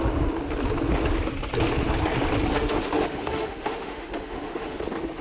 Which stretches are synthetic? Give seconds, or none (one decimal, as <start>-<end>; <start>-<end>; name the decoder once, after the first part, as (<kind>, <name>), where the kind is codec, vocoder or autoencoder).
2.5-4.8 (autoencoder, DAC-VAE)